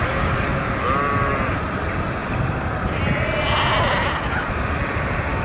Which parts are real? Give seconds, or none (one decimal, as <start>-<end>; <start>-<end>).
0.0-5.4